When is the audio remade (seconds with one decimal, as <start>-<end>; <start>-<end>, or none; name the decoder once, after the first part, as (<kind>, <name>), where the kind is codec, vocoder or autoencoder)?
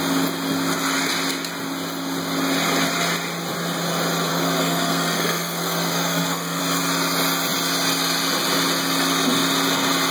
4.3-6.6 (codec, SNAC)